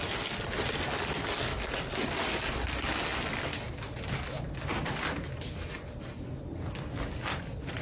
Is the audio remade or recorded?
recorded